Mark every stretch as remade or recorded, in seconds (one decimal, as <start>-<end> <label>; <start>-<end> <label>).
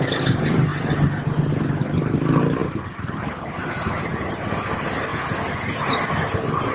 0.0-5.1 recorded; 5.1-5.9 remade; 5.9-6.7 recorded